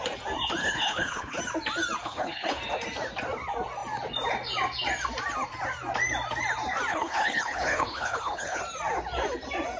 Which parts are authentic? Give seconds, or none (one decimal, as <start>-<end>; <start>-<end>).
0.0-0.6; 1.4-2.0; 2.6-6.9; 8.6-9.8